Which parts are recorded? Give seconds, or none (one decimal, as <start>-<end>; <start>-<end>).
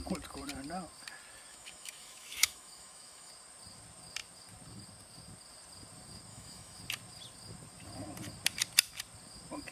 0.0-1.5; 3.3-6.3; 6.8-9.7